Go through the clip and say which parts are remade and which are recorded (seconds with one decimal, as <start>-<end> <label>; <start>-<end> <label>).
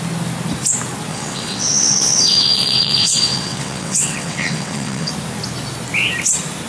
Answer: 0.0-1.1 recorded; 1.1-5.1 remade; 5.1-6.7 recorded